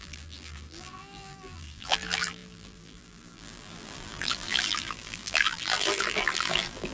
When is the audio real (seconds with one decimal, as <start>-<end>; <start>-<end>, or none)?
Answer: none